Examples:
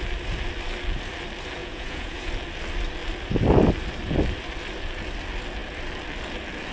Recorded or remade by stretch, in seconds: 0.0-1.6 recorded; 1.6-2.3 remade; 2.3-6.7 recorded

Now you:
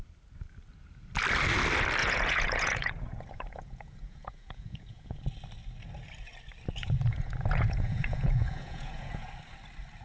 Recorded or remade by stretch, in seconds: 0.0-2.0 recorded; 2.0-5.2 remade; 5.2-6.8 recorded; 6.8-9.3 remade; 9.3-10.0 recorded

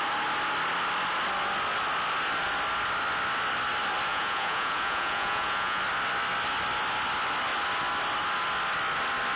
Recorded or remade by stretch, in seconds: 0.0-4.1 recorded; 4.1-5.8 remade; 5.8-9.4 recorded

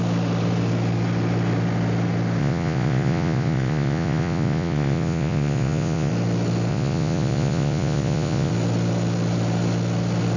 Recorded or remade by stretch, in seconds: 0.0-2.4 recorded; 2.4-6.1 remade; 6.1-6.7 recorded; 6.7-8.5 remade; 8.5-10.4 recorded

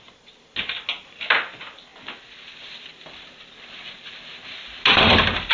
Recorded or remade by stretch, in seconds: 0.0-5.5 recorded

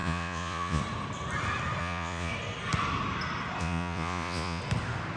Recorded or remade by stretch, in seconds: 0.0-0.8 remade; 0.8-1.8 recorded; 1.8-2.3 remade; 2.3-3.6 recorded; 3.6-4.6 remade; 4.6-5.2 recorded

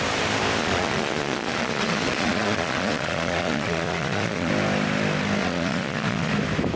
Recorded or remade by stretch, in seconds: 0.0-0.6 recorded; 0.6-4.5 remade; 4.5-5.4 recorded; 5.4-6.3 remade; 6.3-6.8 recorded

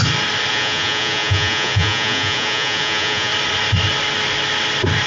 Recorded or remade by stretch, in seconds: 0.0-0.5 recorded; 0.5-3.3 remade; 3.3-5.1 recorded